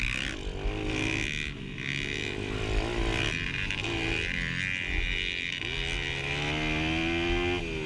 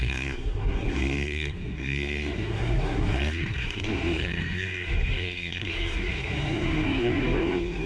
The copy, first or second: second